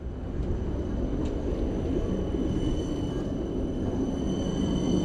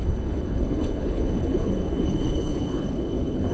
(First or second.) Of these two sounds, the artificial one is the second